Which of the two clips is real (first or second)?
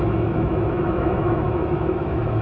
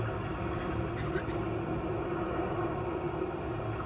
second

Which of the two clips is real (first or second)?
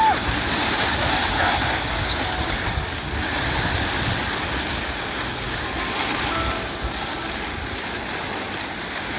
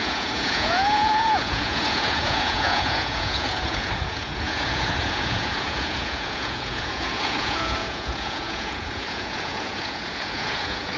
first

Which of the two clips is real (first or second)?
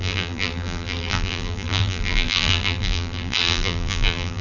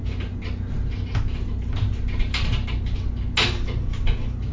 second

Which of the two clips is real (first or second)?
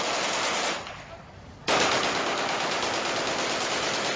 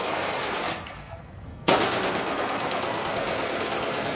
first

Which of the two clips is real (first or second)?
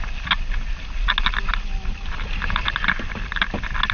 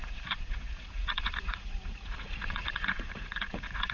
first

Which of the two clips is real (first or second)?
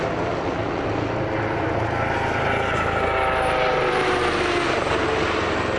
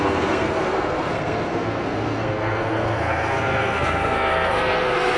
first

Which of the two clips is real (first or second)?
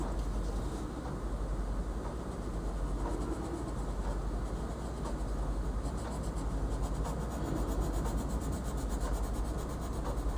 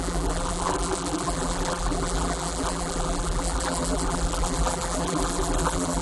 first